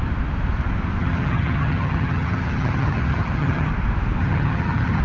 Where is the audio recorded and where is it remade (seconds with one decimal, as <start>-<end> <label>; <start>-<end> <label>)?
0.0-1.0 recorded; 1.0-3.7 remade; 3.7-4.2 recorded; 4.2-5.0 remade